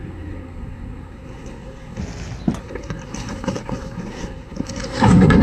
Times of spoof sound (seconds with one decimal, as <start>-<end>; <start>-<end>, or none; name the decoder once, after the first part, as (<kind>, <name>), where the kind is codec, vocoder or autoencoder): 0.0-2.0 (codec, SNAC); 2.6-5.4